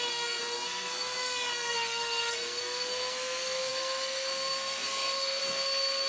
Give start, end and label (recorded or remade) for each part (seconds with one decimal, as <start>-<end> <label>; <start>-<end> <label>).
0.0-6.1 remade